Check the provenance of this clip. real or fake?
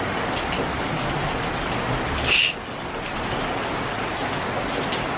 real